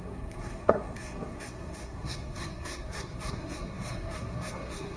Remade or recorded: remade